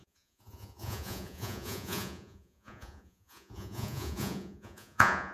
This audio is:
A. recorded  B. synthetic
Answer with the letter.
B